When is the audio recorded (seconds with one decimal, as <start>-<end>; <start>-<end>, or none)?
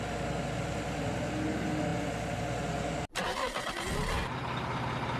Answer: 0.0-5.2